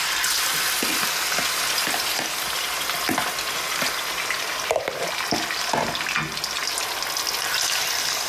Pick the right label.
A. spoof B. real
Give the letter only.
B